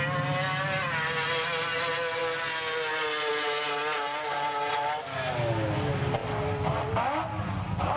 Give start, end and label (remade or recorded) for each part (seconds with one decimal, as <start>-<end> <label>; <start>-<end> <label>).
0.0-8.0 recorded